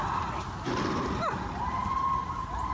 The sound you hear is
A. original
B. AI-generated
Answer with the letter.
A